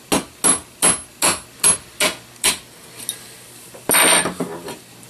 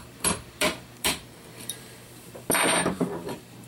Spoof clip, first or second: second